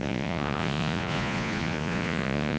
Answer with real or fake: fake